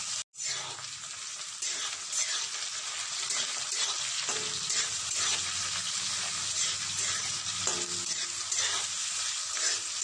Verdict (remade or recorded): recorded